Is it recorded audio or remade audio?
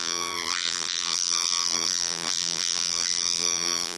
remade